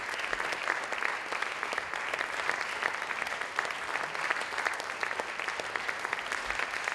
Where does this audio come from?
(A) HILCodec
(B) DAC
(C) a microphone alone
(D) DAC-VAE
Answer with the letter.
C